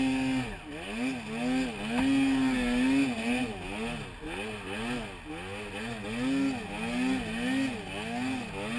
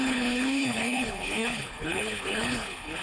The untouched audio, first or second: first